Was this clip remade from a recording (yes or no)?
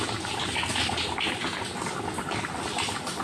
no